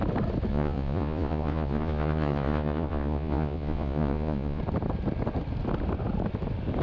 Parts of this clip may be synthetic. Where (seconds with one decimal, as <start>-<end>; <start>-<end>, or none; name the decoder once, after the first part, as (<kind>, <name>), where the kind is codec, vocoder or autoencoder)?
0.5-4.6 (vocoder, Vocos)